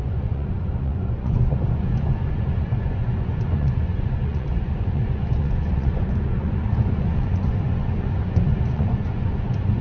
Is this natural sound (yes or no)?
no